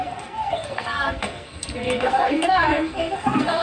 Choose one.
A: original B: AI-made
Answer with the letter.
B